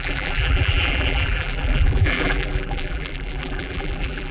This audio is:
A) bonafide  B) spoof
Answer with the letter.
B